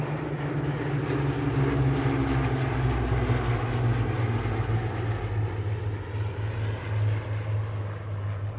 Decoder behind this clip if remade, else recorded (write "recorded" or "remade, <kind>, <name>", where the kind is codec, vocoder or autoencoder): recorded